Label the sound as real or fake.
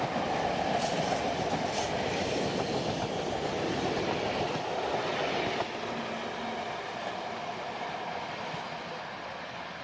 real